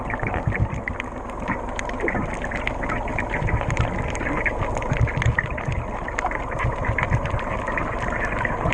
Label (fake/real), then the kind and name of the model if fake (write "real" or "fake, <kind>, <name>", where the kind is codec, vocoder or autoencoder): real